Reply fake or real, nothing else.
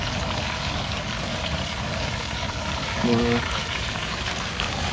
fake